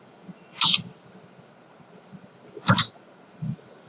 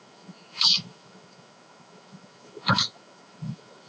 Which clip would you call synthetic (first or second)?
second